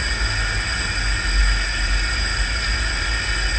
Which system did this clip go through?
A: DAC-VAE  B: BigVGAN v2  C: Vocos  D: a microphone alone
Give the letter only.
D